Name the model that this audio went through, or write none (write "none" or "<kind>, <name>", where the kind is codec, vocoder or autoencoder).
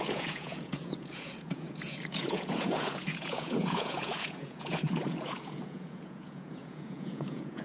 vocoder, Vocos